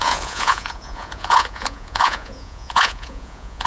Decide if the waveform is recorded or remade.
remade